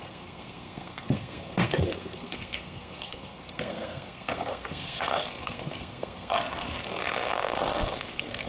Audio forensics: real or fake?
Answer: fake